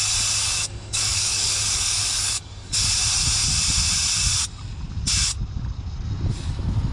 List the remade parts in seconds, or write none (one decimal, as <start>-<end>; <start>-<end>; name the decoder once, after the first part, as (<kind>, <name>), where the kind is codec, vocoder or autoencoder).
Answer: 0.4-2.9 (codec, DAC)